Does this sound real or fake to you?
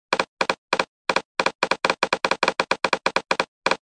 real